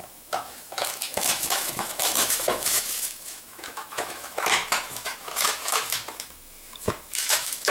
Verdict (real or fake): fake